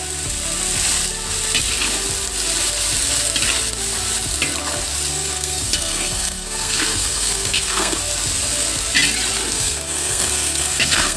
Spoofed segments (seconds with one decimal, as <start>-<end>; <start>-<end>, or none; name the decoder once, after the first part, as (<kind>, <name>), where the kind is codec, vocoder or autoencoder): 5.1-8.0 (codec, SNAC); 9.5-11.2